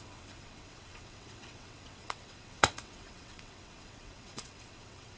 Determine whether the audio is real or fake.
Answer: fake